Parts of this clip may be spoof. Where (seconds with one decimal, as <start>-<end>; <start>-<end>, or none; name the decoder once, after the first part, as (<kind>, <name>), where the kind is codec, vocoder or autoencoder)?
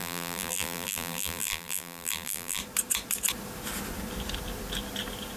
0.0-2.6 (vocoder, BigVGAN v2)